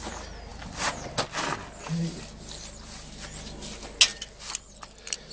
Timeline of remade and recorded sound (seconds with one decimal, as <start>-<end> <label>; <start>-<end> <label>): 0.0-5.3 recorded